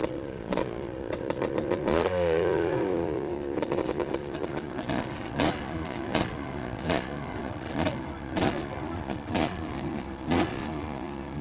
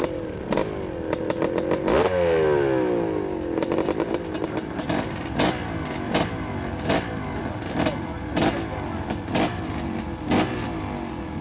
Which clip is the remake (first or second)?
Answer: first